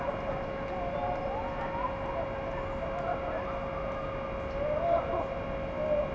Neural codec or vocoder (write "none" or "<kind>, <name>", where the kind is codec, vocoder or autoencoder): none